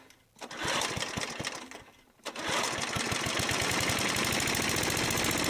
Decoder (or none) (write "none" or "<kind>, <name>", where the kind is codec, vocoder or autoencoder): none